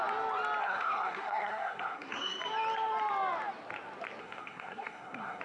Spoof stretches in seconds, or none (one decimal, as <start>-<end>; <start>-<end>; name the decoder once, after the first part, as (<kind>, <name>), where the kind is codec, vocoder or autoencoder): 0.6-2.4 (codec, SNAC); 4.2-5.4